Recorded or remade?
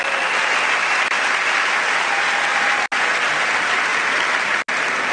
recorded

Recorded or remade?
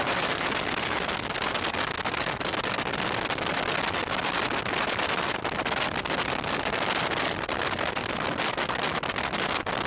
recorded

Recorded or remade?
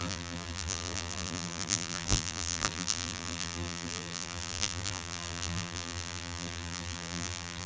remade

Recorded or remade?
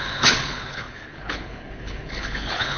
remade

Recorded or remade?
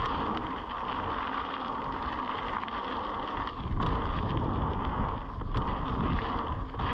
recorded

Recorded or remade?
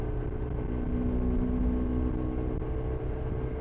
recorded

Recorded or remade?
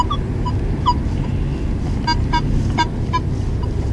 recorded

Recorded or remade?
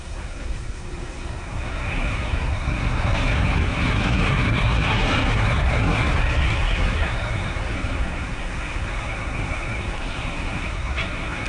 remade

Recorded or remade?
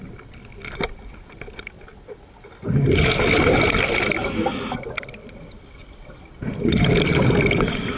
recorded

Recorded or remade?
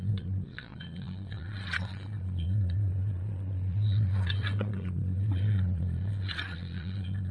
remade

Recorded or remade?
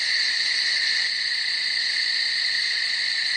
recorded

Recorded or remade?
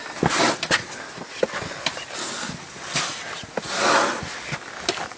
recorded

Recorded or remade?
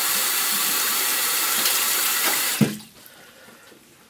remade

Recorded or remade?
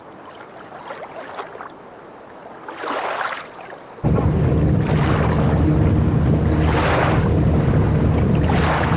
recorded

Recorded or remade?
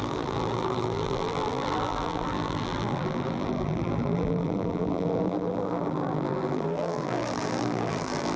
remade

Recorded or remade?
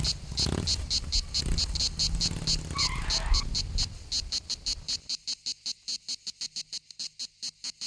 recorded